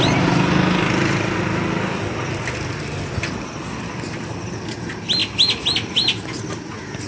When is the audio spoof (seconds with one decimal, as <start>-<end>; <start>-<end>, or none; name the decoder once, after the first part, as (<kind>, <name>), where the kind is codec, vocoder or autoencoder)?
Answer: none